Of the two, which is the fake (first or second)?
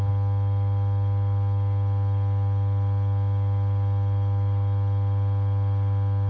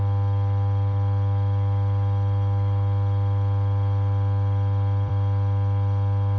second